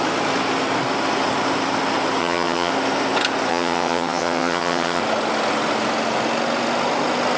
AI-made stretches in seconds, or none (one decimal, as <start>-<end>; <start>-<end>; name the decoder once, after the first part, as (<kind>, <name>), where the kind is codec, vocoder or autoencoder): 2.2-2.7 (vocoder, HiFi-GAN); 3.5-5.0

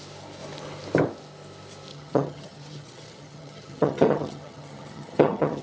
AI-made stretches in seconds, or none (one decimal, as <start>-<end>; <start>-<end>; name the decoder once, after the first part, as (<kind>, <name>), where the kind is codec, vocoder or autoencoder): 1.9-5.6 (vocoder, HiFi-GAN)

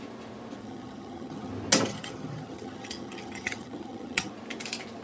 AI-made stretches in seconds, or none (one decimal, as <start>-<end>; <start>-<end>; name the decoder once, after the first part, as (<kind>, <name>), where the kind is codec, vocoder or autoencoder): 0.6-1.5 (vocoder, HiFi-GAN); 1.9-4.3

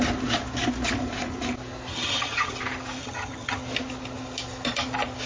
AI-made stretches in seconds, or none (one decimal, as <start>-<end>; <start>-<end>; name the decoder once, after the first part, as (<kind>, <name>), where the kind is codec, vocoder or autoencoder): 1.9-2.5 (vocoder, HiFi-GAN); 3.0-3.6

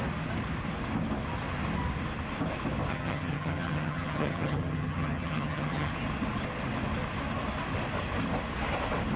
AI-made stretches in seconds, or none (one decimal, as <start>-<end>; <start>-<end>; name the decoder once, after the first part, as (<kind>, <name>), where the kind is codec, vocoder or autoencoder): 2.9-5.9 (vocoder, HiFi-GAN)

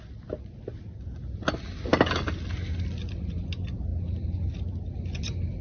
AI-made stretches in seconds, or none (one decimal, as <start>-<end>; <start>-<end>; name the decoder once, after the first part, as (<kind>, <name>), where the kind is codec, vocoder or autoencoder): none